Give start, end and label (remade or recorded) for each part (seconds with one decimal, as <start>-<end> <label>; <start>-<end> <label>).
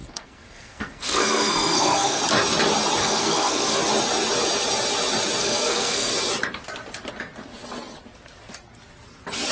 0.0-2.2 remade; 2.2-3.0 recorded; 3.0-3.8 remade; 3.8-5.4 recorded; 5.4-6.1 remade; 6.1-9.5 recorded